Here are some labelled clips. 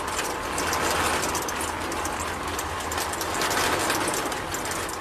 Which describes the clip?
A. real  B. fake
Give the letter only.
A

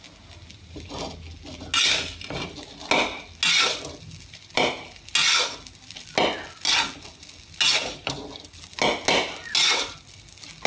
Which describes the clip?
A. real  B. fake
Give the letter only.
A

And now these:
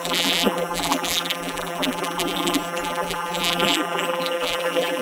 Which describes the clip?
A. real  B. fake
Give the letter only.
B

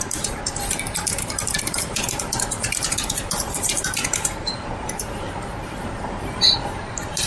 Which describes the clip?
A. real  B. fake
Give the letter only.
B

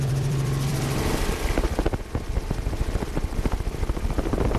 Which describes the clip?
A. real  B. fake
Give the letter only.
B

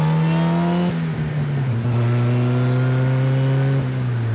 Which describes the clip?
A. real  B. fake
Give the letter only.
A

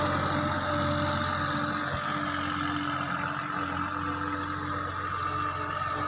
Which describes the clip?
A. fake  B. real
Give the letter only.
B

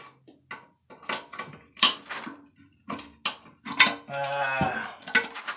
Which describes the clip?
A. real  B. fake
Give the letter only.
A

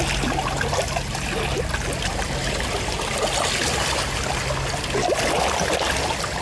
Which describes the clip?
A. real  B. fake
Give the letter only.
A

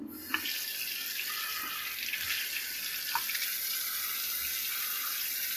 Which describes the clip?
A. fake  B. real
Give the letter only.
B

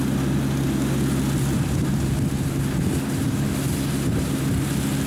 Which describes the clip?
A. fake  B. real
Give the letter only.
B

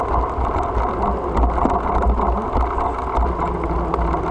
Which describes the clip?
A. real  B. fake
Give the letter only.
A